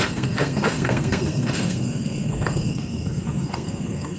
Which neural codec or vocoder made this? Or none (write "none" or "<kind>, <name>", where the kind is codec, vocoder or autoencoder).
codec, SNAC